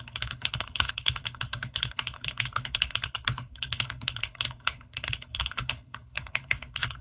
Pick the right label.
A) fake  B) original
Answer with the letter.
A